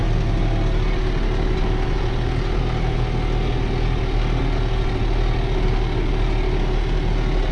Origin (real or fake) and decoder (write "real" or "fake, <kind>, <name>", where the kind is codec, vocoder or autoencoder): real